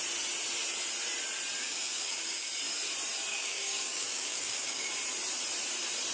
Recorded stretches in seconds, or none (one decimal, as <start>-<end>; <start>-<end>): 0.0-1.6; 2.5-3.3; 4.9-6.1